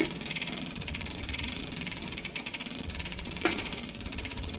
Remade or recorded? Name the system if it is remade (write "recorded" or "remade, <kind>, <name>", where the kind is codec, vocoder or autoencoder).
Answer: remade, vocoder, Vocos